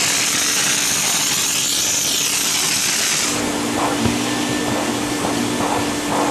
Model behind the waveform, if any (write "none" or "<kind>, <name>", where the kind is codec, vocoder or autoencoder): none